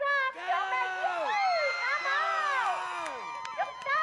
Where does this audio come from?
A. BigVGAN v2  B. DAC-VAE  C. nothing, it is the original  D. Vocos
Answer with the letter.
C